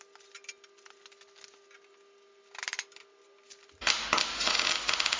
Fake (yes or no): no